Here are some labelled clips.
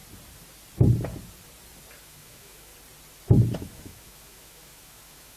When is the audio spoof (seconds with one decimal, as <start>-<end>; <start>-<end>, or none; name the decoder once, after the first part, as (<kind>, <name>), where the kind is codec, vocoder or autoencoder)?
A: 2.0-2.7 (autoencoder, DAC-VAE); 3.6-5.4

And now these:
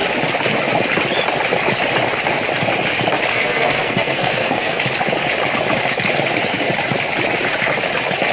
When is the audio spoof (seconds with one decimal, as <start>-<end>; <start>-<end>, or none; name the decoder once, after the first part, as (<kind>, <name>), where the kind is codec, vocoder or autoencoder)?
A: 3.3-4.8 (codec, SNAC)

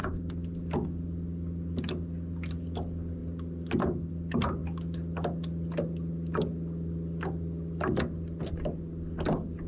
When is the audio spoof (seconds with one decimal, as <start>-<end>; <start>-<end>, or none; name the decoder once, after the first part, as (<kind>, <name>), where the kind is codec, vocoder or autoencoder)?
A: none